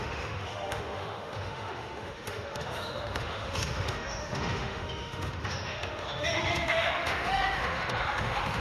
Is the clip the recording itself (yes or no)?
no